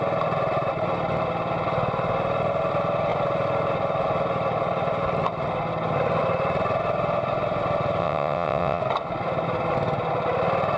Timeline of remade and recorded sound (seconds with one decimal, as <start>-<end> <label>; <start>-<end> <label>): 0.0-8.0 recorded; 8.0-8.8 remade; 8.8-10.8 recorded